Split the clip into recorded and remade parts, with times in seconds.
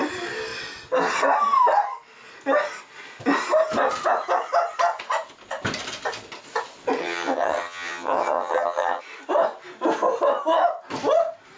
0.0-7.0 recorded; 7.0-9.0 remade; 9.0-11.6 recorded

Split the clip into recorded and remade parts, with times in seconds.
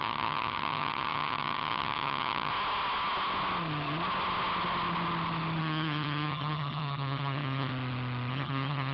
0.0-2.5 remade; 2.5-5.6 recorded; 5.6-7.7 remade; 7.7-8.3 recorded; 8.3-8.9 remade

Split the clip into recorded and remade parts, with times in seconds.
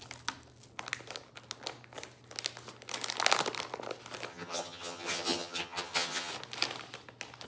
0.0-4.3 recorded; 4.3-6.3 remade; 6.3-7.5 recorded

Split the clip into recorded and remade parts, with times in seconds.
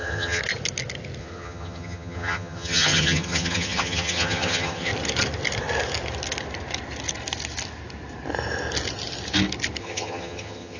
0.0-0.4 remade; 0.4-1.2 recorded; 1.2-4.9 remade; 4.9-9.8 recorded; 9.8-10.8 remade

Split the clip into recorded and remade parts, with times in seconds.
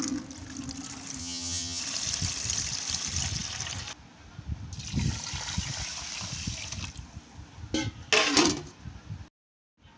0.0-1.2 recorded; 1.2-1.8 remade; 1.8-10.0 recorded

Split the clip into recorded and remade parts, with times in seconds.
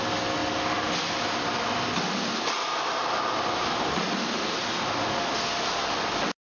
0.0-6.4 recorded